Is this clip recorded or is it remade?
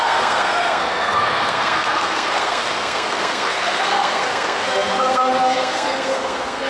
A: remade